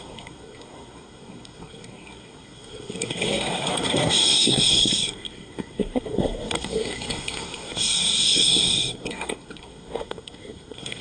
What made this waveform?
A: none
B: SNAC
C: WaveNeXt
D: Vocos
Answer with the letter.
B